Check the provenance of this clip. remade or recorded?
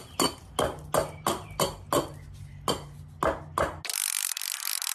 recorded